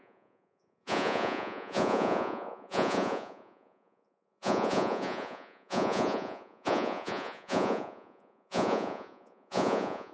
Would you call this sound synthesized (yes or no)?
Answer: yes